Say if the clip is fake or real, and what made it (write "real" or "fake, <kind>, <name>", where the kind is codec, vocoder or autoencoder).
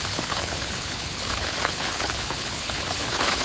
fake, codec, HILCodec